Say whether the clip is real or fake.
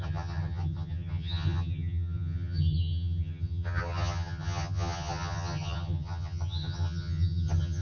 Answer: fake